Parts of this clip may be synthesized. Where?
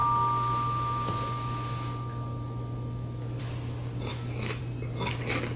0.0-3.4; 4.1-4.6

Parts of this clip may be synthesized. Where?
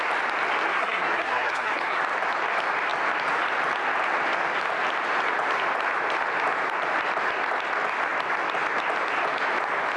0.7-2.0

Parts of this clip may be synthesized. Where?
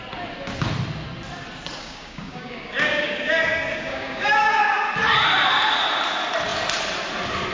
1.8-4.6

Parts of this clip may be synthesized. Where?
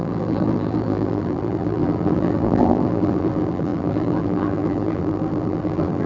0.0-6.1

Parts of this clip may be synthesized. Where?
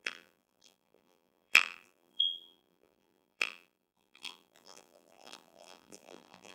0.0-6.5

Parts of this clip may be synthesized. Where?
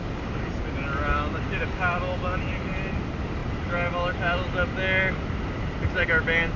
none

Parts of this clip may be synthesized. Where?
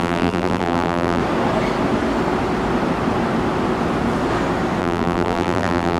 0.0-1.2; 4.8-6.0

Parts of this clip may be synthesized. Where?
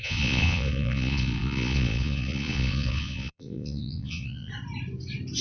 0.0-4.5